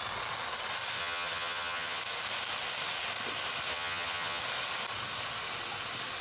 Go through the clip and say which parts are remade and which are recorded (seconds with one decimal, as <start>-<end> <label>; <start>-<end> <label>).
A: 0.0-1.0 recorded; 1.0-2.0 remade; 2.0-3.7 recorded; 3.7-4.4 remade; 4.4-6.2 recorded